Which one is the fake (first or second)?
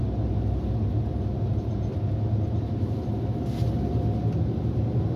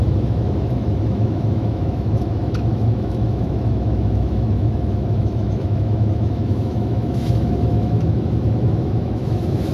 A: second